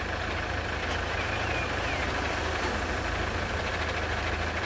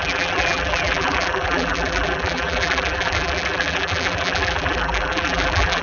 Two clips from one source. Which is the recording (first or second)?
first